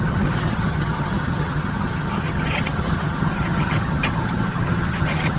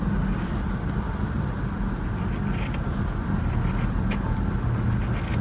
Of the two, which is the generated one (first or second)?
first